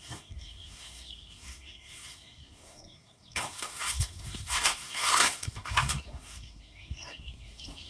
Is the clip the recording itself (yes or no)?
no